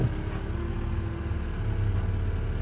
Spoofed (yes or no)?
no